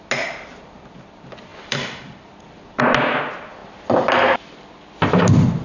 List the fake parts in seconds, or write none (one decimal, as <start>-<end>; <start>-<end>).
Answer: 1.5-2.8